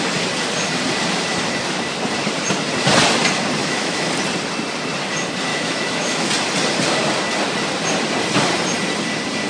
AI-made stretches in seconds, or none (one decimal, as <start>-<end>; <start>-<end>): 3.6-4.1; 5.5-6.3